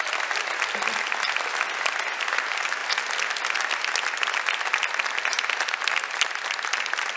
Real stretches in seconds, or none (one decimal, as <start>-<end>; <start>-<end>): 0.0-7.2